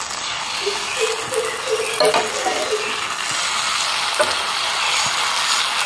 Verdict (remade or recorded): recorded